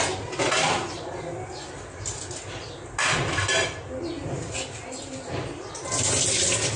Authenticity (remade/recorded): recorded